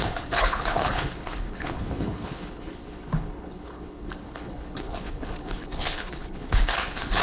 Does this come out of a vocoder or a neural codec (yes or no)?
yes